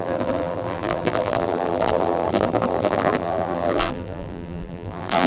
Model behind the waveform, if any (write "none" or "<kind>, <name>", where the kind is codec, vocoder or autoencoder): vocoder, BigVGAN v2